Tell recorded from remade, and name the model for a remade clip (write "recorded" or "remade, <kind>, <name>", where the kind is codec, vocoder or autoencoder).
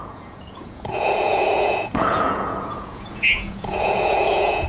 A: remade, vocoder, Vocos